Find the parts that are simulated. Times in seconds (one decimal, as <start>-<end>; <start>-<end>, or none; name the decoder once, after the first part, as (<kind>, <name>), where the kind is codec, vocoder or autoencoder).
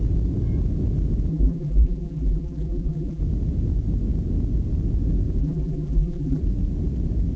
1.3-3.2 (vocoder, BigVGAN v2); 5.4-6.4